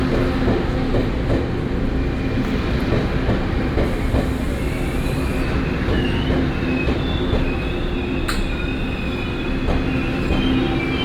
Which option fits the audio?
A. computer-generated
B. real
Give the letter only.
B